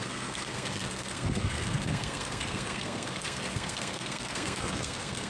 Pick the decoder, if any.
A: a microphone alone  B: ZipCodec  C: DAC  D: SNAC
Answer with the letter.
D